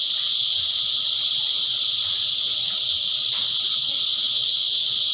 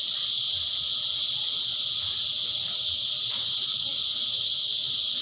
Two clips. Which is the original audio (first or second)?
second